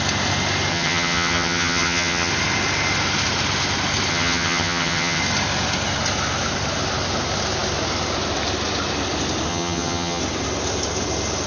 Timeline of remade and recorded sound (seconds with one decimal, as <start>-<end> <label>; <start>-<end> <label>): 0.0-0.7 recorded; 0.7-2.3 remade; 2.3-4.1 recorded; 4.1-5.2 remade; 5.2-9.5 recorded; 9.5-10.2 remade; 10.2-11.5 recorded